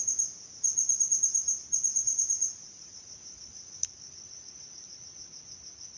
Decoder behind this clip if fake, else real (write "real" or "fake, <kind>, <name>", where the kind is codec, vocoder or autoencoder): real